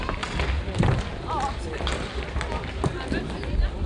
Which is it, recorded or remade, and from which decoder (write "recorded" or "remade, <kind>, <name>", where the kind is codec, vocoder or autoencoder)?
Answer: recorded